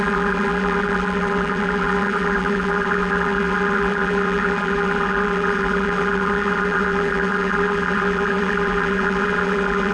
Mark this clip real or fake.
fake